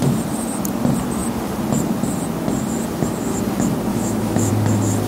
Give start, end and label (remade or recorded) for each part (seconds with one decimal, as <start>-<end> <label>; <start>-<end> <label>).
0.0-3.9 recorded; 3.9-4.5 remade; 4.5-5.1 recorded